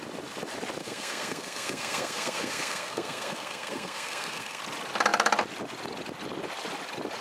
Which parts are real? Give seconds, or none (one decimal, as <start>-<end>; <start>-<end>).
0.0-0.8; 4.6-7.2